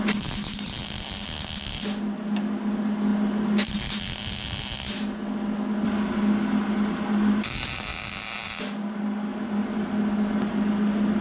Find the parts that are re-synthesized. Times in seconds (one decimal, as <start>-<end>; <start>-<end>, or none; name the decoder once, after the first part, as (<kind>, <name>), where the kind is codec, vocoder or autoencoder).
none